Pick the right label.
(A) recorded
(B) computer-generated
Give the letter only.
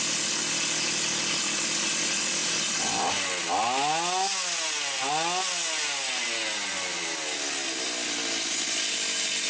A